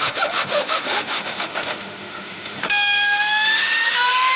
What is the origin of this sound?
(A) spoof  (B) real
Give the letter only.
A